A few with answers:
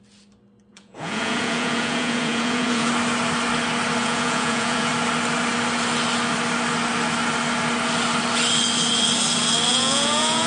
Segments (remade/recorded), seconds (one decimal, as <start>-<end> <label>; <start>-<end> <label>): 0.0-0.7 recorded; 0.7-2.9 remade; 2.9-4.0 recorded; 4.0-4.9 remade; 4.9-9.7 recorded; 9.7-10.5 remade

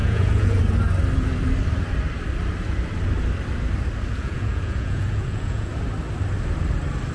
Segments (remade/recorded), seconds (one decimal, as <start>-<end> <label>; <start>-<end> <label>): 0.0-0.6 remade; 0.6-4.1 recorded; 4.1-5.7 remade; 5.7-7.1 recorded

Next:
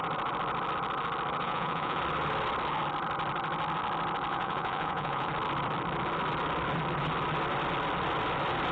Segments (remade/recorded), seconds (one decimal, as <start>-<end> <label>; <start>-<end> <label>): 0.0-1.4 recorded; 1.4-2.0 remade; 2.0-4.3 recorded; 4.3-5.3 remade; 5.3-8.7 recorded

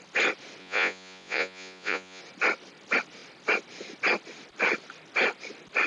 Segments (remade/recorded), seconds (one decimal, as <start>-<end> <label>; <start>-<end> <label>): 0.0-0.6 recorded; 0.6-2.2 remade; 2.2-5.9 recorded

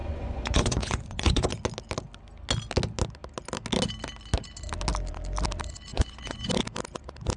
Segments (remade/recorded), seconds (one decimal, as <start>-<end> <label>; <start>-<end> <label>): 0.0-1.5 remade; 1.5-5.9 recorded; 5.9-6.5 remade; 6.5-7.4 recorded

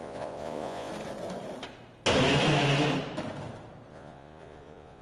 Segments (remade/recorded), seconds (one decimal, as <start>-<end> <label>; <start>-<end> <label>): 0.0-0.9 remade; 0.9-3.9 recorded; 3.9-5.0 remade

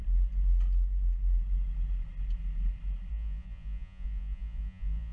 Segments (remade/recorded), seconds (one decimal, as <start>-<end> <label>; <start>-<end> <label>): 0.0-3.1 recorded; 3.1-5.1 remade

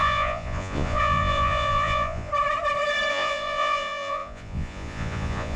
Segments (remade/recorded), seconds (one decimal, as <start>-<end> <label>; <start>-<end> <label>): 0.0-2.3 remade; 2.3-3.1 recorded; 3.1-5.6 remade